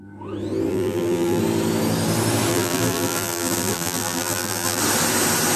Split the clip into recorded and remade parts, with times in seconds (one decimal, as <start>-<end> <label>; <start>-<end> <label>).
0.0-0.7 recorded; 0.7-1.4 remade; 1.4-2.5 recorded; 2.5-4.8 remade; 4.8-5.6 recorded